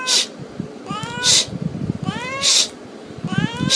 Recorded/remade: recorded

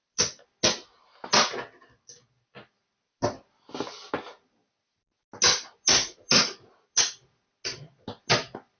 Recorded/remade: recorded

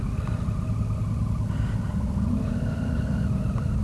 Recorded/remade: recorded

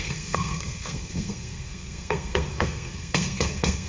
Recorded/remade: remade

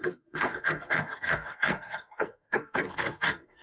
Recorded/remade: remade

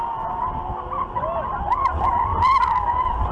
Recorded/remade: recorded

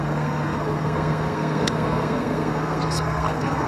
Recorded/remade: remade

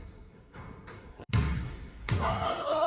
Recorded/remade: remade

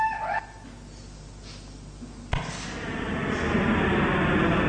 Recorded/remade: recorded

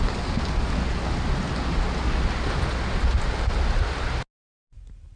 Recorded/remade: recorded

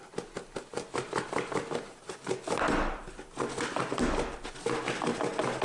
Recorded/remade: recorded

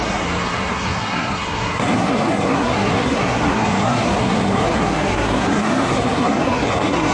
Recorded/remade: remade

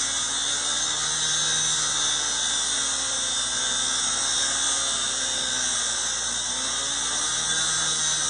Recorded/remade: recorded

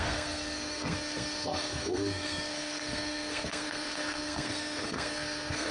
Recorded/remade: remade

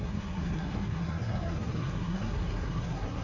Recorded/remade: remade